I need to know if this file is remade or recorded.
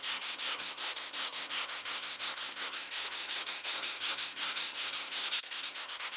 remade